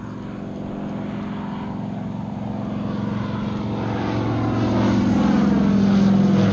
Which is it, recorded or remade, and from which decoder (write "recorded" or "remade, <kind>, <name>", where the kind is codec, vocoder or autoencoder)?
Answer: recorded